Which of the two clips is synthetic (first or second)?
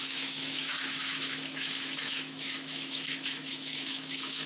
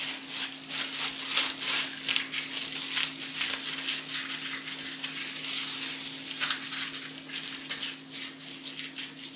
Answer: first